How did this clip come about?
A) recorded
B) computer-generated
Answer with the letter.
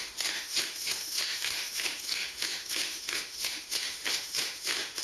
B